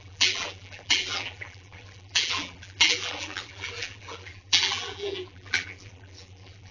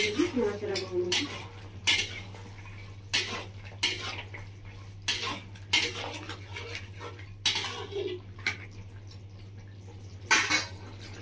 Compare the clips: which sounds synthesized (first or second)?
first